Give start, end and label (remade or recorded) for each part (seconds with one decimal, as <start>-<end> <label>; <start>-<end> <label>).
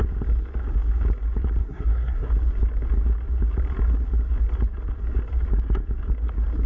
0.0-1.6 recorded; 1.6-2.3 remade; 2.3-6.7 recorded